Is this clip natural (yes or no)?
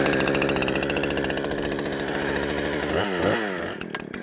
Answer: yes